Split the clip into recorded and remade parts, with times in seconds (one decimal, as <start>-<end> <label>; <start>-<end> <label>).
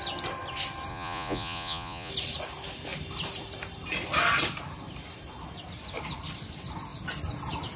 0.0-0.9 recorded; 0.9-2.1 remade; 2.1-7.8 recorded